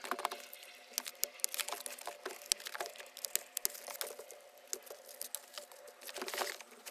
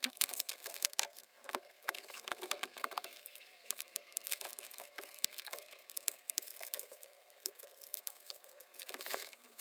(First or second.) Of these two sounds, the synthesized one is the second